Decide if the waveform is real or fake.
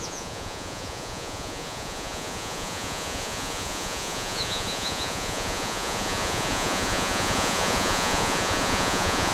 fake